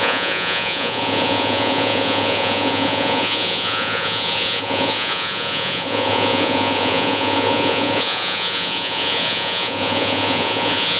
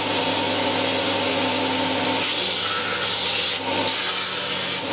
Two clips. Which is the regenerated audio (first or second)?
first